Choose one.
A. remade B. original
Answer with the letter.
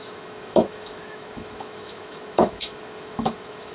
A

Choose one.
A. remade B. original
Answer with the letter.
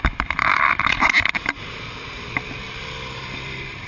A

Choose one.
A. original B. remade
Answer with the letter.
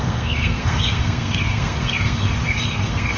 B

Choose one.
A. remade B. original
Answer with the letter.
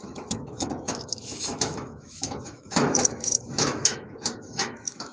A